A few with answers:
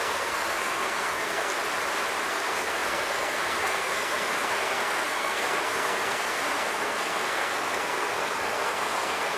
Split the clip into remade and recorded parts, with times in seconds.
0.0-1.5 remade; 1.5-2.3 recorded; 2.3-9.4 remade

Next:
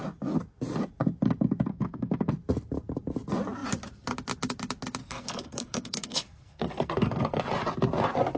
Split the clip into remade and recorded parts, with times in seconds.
0.0-1.7 recorded; 1.7-2.3 remade; 2.3-5.0 recorded; 5.0-7.4 remade; 7.4-8.4 recorded